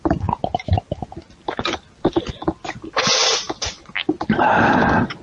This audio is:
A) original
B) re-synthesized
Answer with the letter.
A